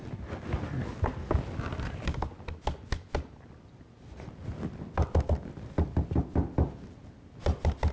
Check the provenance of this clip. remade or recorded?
recorded